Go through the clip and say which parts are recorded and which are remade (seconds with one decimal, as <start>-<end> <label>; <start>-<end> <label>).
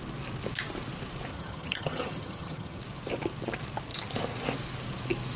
0.0-1.3 recorded; 1.3-2.8 remade; 2.8-5.4 recorded